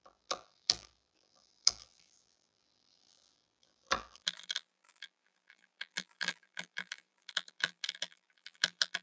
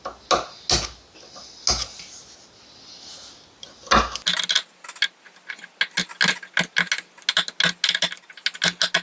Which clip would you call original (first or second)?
second